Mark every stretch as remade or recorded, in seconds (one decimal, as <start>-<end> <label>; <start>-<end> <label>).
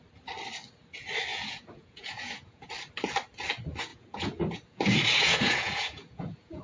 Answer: 0.0-1.3 recorded; 1.3-2.7 remade; 2.7-3.9 recorded; 3.9-6.6 remade